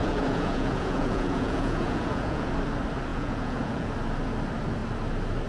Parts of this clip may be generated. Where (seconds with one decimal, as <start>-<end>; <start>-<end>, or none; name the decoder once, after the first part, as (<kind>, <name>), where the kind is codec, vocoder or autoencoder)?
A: 0.0-2.5 (vocoder, Vocos); 3.1-3.9